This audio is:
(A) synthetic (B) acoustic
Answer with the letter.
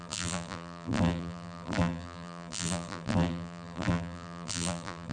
A